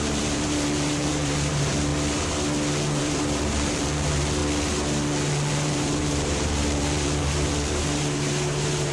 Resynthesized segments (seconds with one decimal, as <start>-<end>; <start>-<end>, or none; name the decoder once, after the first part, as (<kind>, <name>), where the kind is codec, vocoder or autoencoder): 0.0-1.9 (vocoder, BigVGAN v2); 3.0-4.4; 5.5-8.9

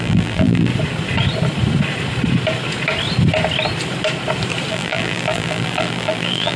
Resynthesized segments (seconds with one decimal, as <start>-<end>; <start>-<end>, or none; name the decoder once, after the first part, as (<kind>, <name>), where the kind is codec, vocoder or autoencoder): 0.0-0.7 (vocoder, BigVGAN v2); 4.7-6.6

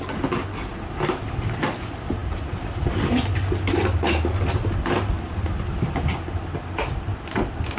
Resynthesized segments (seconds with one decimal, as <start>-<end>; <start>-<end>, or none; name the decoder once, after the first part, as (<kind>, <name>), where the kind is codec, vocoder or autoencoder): 0.7-1.2 (vocoder, BigVGAN v2); 2.2-6.1

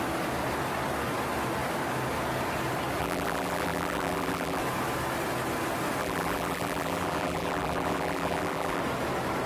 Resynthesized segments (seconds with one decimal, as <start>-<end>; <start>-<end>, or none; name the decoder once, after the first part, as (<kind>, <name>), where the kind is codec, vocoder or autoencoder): 3.0-4.6 (vocoder, BigVGAN v2); 6.0-8.8

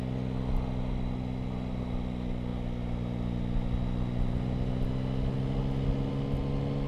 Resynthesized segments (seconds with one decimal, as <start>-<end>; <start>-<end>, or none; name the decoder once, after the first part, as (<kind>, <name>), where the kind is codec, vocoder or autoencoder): none